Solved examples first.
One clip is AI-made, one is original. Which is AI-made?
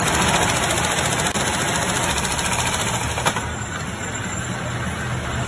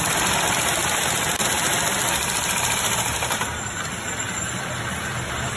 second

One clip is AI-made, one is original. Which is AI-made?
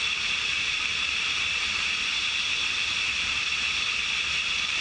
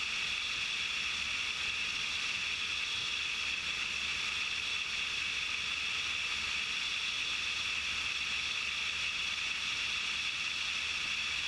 first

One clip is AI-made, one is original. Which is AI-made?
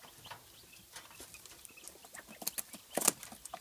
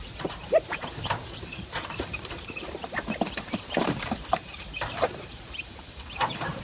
second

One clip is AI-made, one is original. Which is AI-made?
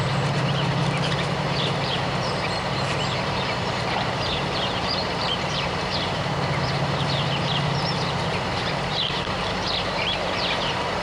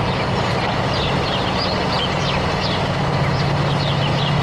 first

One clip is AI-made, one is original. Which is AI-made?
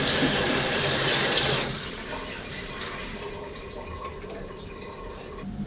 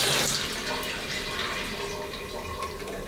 first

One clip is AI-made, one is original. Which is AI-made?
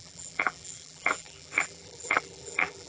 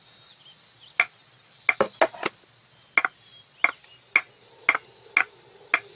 first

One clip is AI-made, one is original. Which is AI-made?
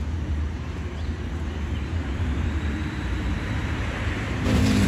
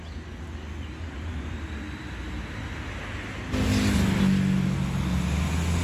first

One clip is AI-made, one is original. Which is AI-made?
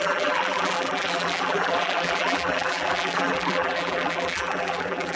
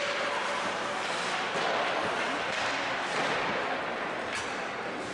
first